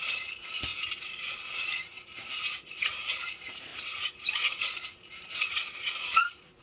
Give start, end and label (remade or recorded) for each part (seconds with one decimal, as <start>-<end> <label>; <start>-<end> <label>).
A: 0.0-6.6 remade